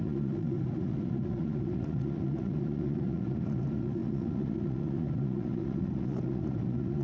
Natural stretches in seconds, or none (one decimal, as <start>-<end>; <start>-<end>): none